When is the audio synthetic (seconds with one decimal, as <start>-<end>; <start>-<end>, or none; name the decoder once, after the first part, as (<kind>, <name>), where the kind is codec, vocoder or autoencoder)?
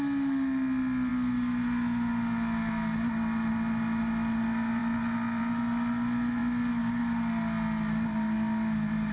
none